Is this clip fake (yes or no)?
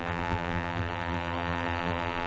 yes